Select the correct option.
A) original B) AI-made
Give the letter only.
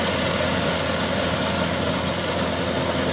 A